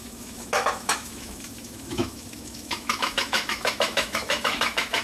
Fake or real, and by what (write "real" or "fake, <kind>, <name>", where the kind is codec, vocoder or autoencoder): fake, autoencoder, DAC-VAE